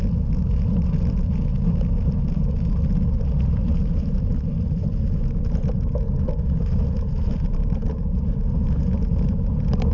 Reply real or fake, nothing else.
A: real